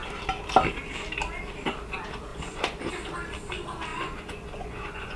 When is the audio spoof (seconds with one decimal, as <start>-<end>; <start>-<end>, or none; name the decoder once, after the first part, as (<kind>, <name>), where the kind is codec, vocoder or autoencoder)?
2.3-2.9 (vocoder, Vocos); 3.9-5.2